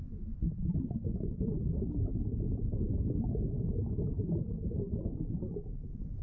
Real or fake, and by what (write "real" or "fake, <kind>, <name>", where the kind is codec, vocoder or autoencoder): real